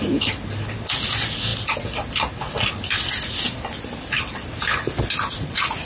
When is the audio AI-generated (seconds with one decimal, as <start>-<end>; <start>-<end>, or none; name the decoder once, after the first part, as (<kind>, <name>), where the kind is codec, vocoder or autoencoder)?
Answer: none